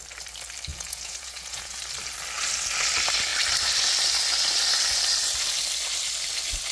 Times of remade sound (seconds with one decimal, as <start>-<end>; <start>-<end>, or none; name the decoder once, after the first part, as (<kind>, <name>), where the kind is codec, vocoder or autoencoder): 0.7-1.8 (vocoder, Vocos)